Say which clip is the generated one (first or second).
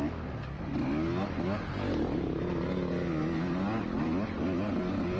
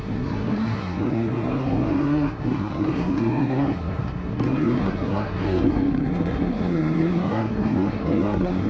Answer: second